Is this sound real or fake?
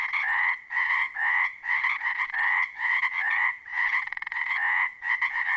fake